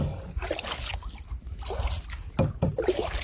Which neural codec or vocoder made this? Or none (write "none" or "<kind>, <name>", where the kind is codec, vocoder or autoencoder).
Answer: none